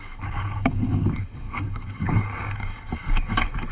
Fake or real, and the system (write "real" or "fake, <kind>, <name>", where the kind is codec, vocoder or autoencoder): fake, codec, DAC